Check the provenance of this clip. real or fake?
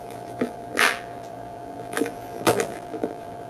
fake